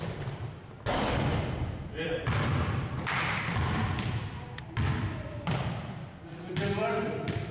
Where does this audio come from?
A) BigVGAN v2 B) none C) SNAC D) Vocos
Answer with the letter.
A